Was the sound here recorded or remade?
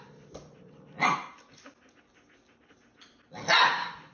recorded